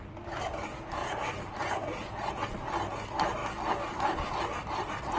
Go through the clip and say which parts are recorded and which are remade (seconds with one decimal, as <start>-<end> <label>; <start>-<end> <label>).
0.0-1.0 recorded; 1.0-2.3 remade; 2.3-5.2 recorded